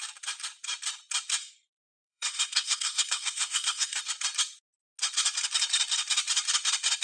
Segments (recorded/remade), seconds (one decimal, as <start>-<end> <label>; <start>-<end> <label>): 0.0-1.4 recorded; 1.4-4.0 remade; 4.0-7.0 recorded